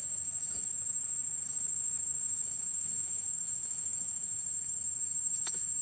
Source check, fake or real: fake